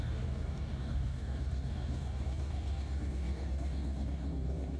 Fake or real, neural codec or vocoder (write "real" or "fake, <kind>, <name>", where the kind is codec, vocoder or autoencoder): fake, codec, DAC